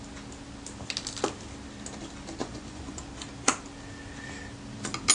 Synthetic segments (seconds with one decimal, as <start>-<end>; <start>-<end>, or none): 2.4-3.0